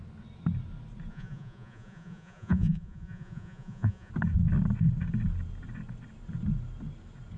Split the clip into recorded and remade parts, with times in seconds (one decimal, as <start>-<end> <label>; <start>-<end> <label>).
0.0-1.1 recorded; 1.1-4.1 remade; 4.1-7.4 recorded